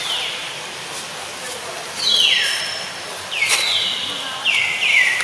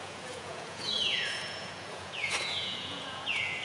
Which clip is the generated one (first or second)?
second